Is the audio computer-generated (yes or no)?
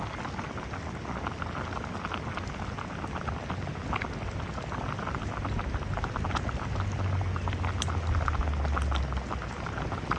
no